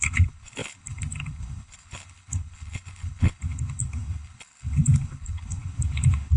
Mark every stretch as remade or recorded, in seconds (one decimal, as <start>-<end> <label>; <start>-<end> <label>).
0.0-6.4 remade